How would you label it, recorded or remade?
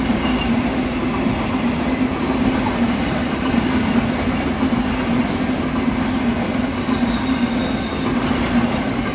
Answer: recorded